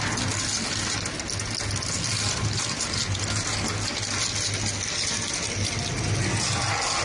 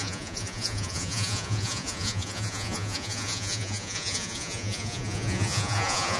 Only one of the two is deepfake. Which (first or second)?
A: second